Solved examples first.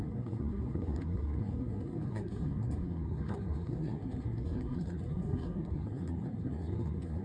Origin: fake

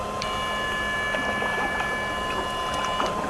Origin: real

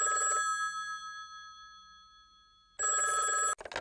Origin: real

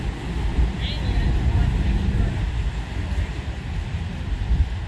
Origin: real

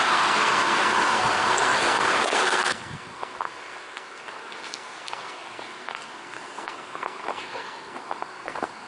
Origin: fake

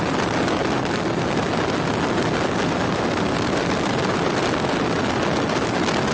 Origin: real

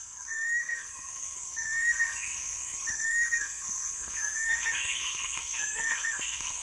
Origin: fake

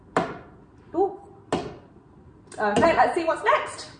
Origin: real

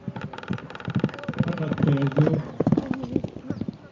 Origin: real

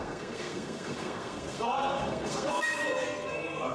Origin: fake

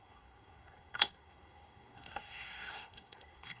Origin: fake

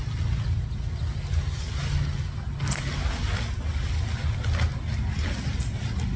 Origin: real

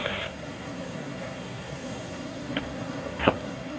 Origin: fake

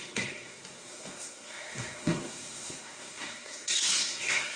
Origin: fake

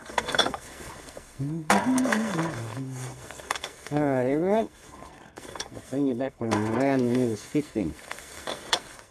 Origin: fake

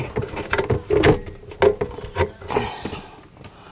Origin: real